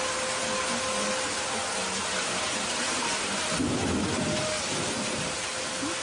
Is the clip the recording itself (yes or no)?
yes